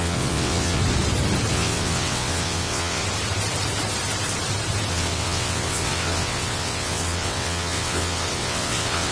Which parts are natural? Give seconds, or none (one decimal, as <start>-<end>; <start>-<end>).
0.8-1.5; 3.0-4.9